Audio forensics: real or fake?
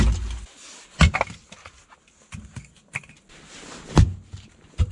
real